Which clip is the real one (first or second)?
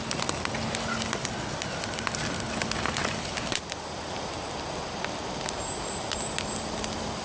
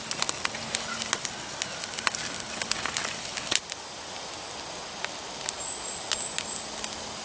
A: second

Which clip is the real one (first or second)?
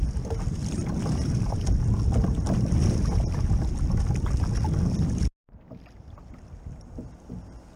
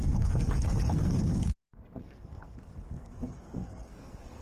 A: first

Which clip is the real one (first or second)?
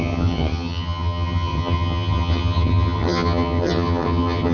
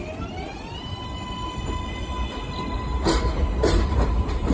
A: second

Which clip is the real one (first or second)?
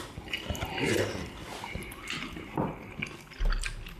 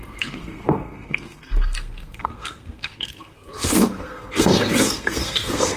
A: first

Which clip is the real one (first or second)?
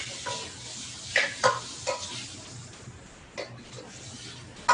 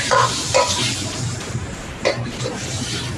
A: first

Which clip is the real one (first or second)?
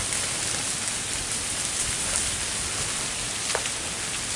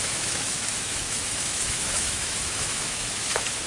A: first